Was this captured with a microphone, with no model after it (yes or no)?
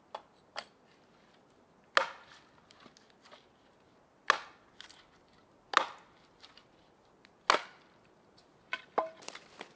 yes